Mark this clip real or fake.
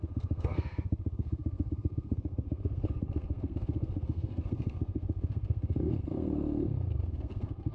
fake